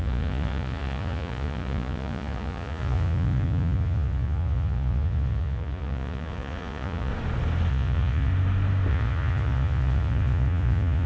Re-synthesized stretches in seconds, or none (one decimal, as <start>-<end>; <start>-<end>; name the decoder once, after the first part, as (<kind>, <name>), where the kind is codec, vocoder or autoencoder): 0.0-7.1 (vocoder, Vocos); 7.7-8.3; 8.9-11.1